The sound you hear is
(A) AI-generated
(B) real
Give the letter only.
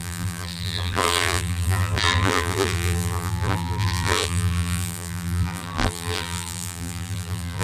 A